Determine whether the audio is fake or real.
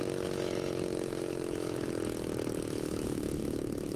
fake